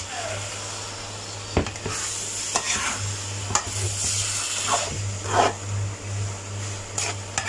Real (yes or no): yes